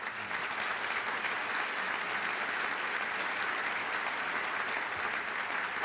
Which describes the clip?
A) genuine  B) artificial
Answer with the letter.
A